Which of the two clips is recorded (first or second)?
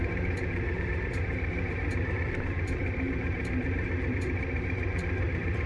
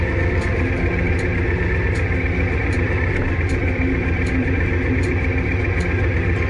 second